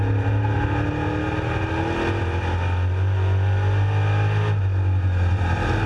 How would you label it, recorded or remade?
recorded